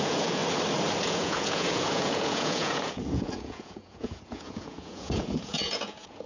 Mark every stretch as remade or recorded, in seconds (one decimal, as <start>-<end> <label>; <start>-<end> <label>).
0.0-0.4 remade; 0.4-1.0 recorded; 1.0-6.3 remade